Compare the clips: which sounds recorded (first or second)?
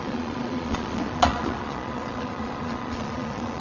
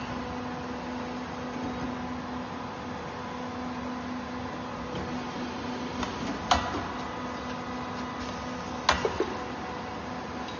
second